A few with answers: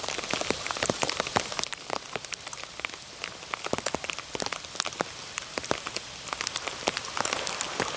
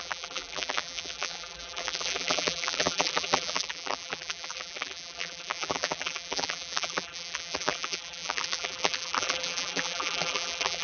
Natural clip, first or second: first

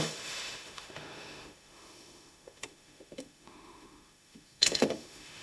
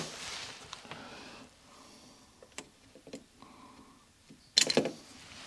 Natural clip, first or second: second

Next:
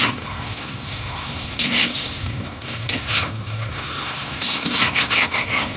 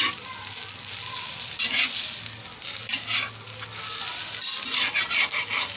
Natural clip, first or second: second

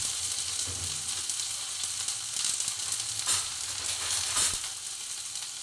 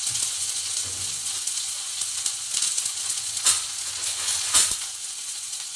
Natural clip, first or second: first